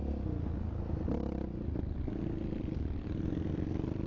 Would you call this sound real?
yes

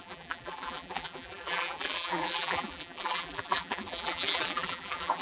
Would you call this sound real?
no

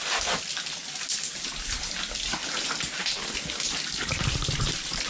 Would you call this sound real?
yes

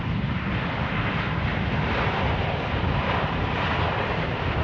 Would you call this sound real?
yes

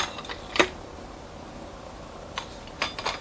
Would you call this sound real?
yes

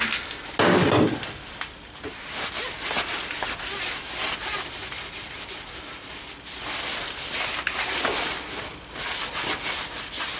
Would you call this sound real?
yes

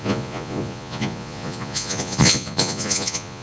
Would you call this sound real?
no